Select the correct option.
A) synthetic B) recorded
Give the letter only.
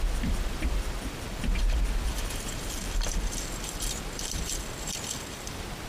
A